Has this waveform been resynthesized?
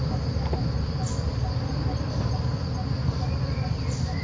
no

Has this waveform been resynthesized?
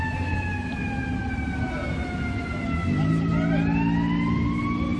no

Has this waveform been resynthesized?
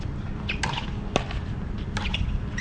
no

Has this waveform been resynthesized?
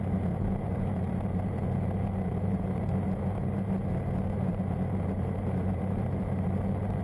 yes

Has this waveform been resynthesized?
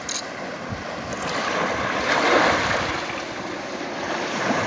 no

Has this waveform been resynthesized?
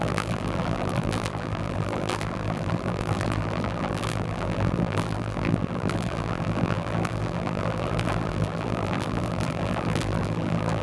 yes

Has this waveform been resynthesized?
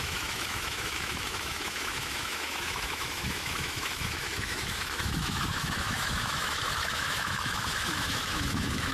yes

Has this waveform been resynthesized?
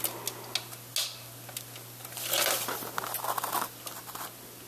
no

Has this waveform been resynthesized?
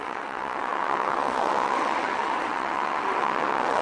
yes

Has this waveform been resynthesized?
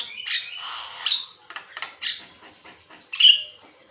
no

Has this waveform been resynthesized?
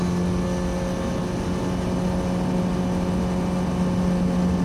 no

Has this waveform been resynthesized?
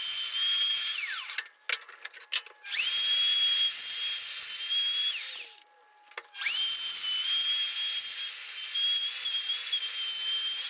no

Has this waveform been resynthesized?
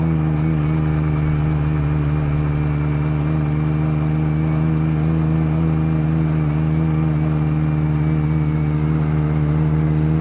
no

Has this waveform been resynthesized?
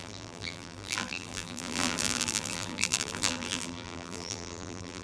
yes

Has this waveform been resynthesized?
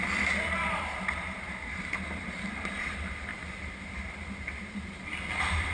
yes